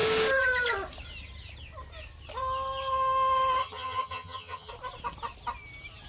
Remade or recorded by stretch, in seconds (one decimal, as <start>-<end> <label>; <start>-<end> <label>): 0.0-3.6 recorded; 3.6-4.7 remade; 4.7-6.1 recorded